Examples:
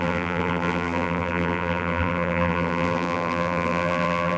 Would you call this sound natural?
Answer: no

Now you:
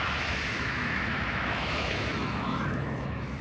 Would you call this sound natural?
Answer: no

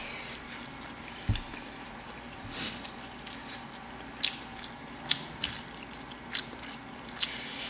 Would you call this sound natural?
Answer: yes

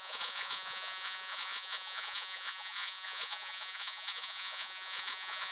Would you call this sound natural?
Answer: no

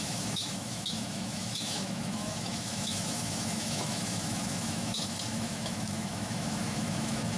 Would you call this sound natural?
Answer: no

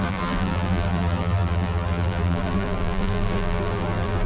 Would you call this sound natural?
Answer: no